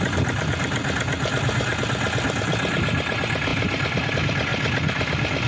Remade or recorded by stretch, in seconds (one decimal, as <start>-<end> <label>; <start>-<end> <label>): 0.0-5.5 recorded